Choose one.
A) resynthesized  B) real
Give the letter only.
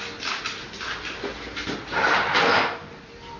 B